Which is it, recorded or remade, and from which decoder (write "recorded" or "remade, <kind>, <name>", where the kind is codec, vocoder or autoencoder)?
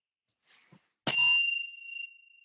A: recorded